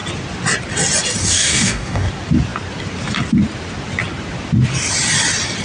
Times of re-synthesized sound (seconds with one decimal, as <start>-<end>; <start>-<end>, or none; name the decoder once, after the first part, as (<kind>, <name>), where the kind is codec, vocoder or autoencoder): 1.2-2.1 (codec, DAC)